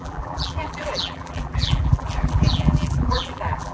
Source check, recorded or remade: remade